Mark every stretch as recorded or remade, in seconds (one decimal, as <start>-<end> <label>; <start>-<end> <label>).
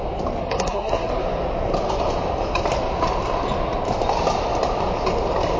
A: 0.0-0.4 recorded; 0.4-1.2 remade; 1.2-5.6 recorded